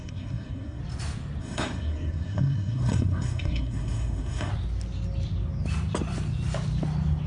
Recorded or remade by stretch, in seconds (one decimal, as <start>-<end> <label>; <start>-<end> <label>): 0.0-0.8 remade; 0.8-1.4 recorded; 1.4-4.5 remade; 4.5-7.3 recorded